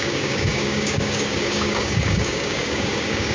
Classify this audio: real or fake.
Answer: fake